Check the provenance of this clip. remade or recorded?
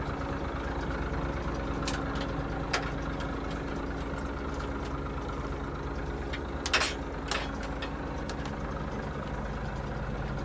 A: recorded